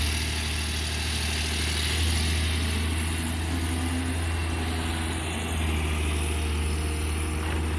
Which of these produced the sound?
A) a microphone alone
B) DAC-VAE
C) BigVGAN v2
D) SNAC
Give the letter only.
A